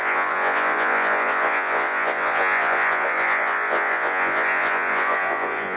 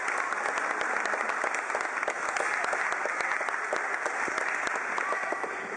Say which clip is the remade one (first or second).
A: first